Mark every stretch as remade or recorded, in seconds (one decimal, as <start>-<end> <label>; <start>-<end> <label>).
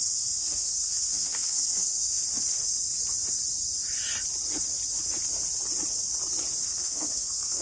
0.0-2.2 remade; 2.2-6.7 recorded; 6.7-7.6 remade